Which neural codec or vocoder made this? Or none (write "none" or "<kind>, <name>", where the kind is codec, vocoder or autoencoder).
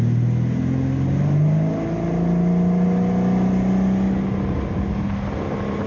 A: none